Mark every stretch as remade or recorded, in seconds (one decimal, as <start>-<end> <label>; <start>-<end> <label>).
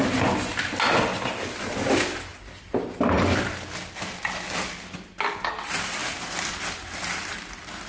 0.0-1.1 recorded; 1.1-1.7 remade; 1.7-7.9 recorded